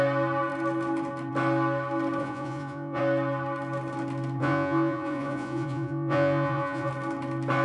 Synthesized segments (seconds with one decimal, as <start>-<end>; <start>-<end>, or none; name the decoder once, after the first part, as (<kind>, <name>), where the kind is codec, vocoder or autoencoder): 2.2-3.0 (vocoder, Vocos); 4.4-6.9